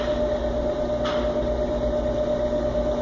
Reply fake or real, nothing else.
real